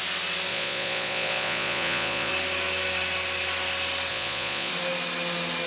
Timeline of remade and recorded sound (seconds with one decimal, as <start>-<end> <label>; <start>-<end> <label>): 0.0-0.5 recorded; 0.5-2.3 remade; 2.3-4.1 recorded; 4.1-4.7 remade; 4.7-5.7 recorded

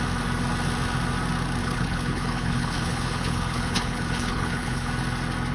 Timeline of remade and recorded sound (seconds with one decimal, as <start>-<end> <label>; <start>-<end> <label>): 0.0-1.6 recorded; 1.6-4.9 remade; 4.9-5.5 recorded

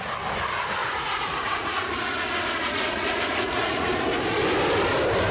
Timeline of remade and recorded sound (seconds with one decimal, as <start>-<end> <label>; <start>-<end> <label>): 0.0-0.8 recorded; 0.8-4.0 remade; 4.0-5.3 recorded

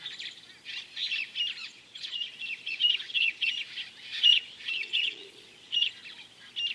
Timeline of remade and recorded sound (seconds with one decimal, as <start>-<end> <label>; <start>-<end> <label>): 0.0-1.6 recorded; 1.6-2.3 remade; 2.3-2.7 recorded; 2.7-3.6 remade; 3.6-4.1 recorded; 4.1-5.9 remade; 5.9-6.7 recorded

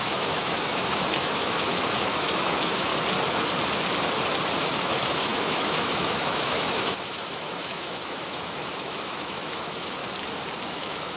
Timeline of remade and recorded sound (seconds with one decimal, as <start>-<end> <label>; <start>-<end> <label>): 0.0-2.9 remade; 2.9-4.6 recorded; 4.6-10.0 remade; 10.0-10.7 recorded; 10.7-11.2 remade

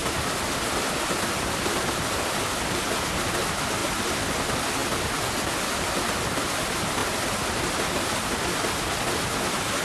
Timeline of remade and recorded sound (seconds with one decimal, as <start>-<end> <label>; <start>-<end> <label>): 0.0-2.4 remade; 2.4-3.8 recorded; 3.8-4.3 remade; 4.3-9.8 recorded

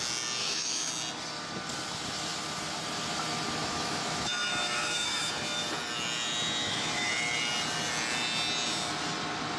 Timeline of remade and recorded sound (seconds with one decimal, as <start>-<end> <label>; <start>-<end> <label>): 0.0-0.4 recorded; 0.4-0.9 remade; 0.9-3.6 recorded; 3.6-5.3 remade; 5.3-6.6 recorded; 6.6-7.1 remade; 7.1-9.6 recorded

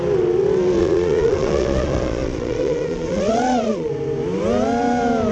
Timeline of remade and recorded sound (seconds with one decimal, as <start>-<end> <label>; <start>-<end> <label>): 0.0-0.8 recorded; 0.8-3.9 remade; 3.9-5.3 recorded